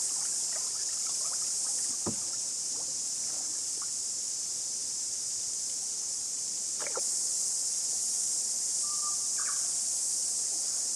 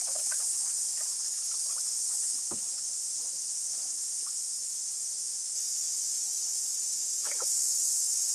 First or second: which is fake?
second